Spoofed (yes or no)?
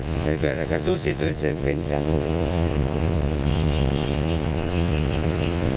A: yes